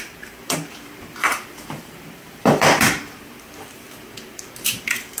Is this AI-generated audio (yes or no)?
yes